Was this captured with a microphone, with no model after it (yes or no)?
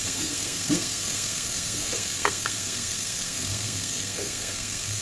no